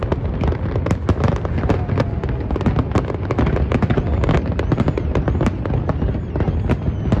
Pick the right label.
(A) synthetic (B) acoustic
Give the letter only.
B